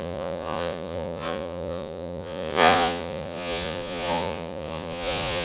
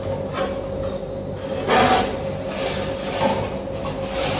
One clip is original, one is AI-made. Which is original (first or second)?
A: second